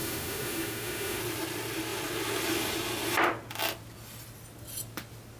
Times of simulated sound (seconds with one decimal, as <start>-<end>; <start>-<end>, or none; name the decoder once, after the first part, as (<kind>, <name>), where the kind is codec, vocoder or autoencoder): 0.0-1.2 (autoencoder, DAC-VAE)